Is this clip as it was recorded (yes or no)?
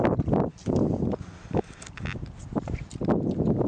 yes